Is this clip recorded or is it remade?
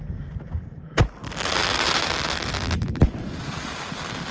recorded